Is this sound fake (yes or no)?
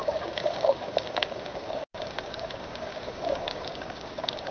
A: yes